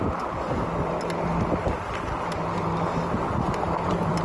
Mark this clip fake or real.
real